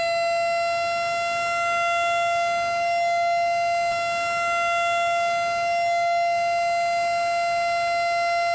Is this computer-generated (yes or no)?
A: no